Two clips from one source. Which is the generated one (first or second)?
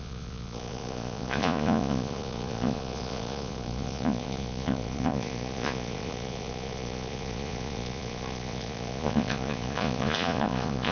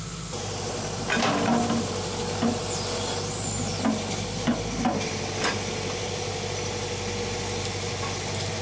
first